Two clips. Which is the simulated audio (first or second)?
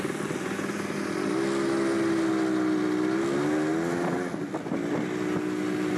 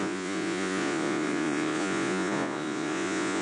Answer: second